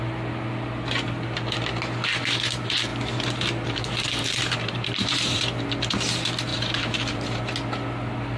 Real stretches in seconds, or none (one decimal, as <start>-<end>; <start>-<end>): 0.0-2.9; 5.4-6.5; 7.4-8.4